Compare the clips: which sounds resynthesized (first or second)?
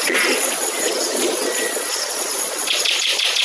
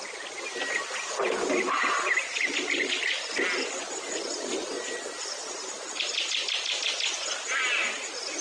first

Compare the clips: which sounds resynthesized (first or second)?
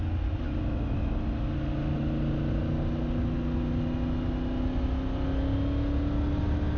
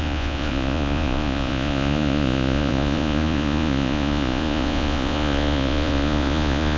second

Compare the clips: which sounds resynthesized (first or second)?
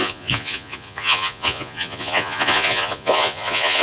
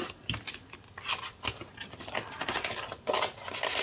first